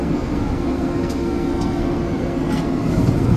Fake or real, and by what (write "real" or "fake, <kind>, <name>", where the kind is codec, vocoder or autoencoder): fake, codec, SNAC